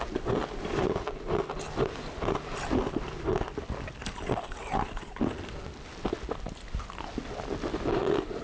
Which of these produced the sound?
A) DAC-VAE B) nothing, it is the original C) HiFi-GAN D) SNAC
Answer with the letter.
B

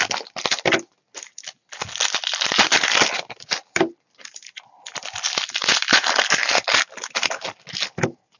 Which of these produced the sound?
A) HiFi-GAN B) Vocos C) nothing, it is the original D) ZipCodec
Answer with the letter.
C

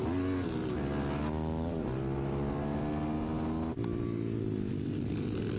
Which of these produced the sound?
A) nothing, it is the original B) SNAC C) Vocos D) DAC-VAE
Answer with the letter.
A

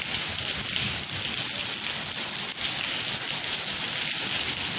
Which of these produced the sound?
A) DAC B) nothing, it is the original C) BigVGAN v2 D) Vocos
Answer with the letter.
B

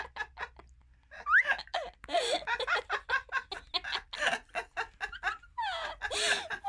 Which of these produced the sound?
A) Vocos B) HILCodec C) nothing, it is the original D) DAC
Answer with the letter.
C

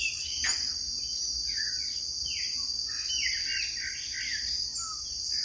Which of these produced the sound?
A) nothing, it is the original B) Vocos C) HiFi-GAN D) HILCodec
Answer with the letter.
A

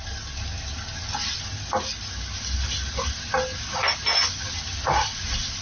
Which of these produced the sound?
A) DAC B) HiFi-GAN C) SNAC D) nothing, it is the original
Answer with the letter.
D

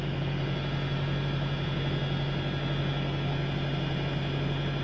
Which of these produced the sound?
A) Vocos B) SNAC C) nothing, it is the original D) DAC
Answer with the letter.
C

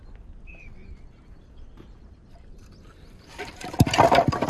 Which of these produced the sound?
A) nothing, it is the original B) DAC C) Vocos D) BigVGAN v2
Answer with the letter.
A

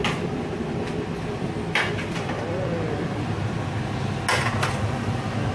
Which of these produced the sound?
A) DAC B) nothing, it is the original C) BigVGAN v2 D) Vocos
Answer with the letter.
B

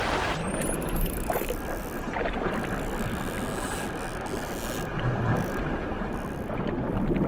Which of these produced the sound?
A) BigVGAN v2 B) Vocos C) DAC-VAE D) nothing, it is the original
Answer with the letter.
D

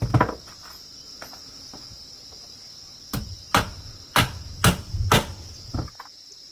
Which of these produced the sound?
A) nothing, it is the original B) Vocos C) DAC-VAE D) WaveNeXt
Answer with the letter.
A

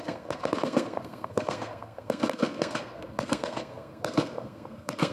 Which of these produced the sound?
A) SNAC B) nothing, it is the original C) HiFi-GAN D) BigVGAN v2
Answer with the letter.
A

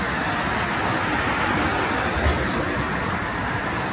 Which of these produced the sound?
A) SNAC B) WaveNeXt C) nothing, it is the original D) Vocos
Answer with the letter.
C